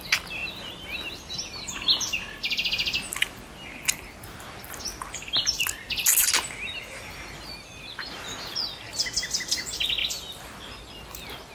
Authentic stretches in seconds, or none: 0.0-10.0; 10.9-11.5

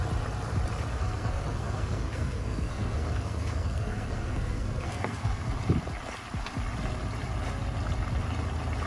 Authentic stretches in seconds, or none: 0.0-0.9; 5.5-8.9

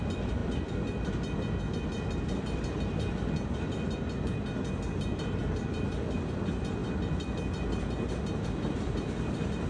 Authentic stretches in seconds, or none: 0.0-9.7

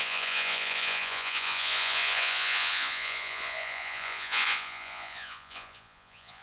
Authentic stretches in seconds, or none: none

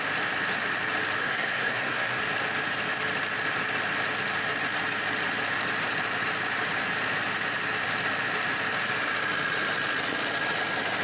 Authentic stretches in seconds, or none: 0.0-1.2; 2.2-11.0

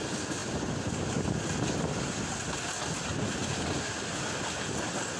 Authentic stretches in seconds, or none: 0.0-5.2